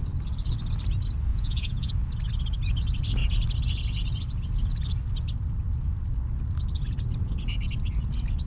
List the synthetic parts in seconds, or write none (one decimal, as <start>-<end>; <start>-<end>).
1.3-1.9